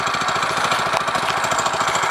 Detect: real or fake real